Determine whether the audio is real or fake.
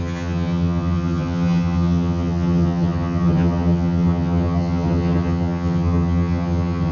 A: fake